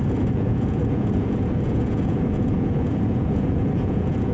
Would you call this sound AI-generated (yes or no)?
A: yes